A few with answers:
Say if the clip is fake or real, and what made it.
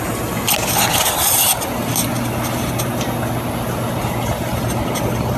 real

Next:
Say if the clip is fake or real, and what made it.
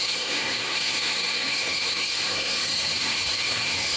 fake, codec, SNAC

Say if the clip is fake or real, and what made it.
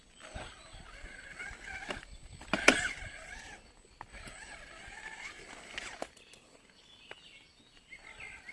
real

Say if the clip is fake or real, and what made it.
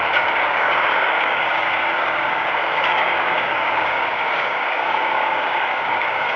fake, codec, DAC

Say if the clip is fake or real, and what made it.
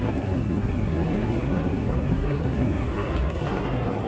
fake, codec, SNAC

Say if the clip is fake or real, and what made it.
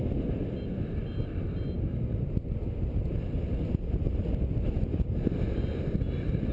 real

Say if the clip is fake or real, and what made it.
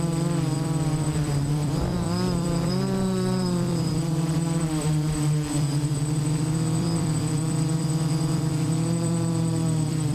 fake, vocoder, BigVGAN v2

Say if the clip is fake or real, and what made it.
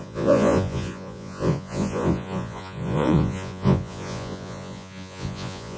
fake, vocoder, Vocos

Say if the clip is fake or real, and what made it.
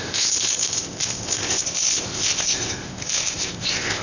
fake, codec, ZipCodec